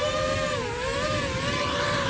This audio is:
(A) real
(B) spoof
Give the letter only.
A